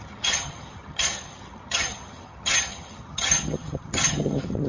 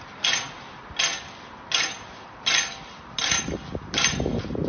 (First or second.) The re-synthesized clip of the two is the first